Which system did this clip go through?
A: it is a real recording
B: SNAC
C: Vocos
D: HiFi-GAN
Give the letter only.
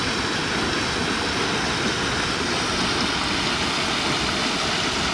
A